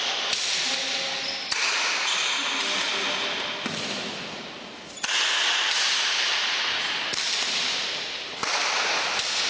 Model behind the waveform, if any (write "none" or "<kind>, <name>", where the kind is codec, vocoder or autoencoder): none